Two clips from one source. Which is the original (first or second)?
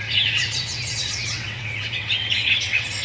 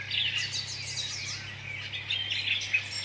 second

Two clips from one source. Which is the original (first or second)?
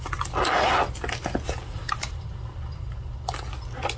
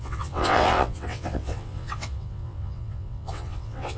first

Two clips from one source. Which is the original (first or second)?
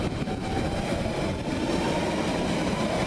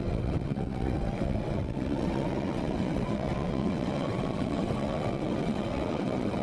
first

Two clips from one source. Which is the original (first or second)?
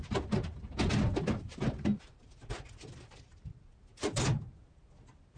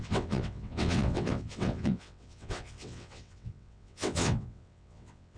first